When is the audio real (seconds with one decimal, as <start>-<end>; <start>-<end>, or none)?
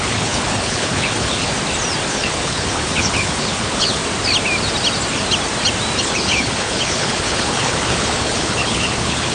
1.5-2.1; 4.0-6.0